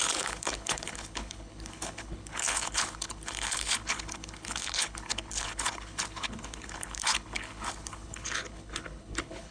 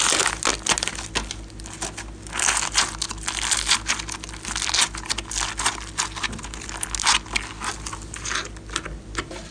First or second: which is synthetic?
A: first